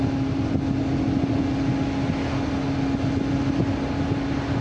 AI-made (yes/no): no